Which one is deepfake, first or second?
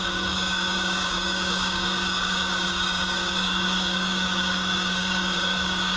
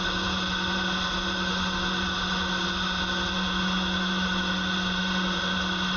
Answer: first